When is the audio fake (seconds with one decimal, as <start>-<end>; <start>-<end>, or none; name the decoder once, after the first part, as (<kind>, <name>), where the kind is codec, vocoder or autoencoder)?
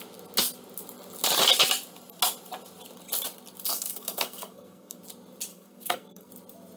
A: 3.7-5.0 (codec, SNAC); 5.5-6.3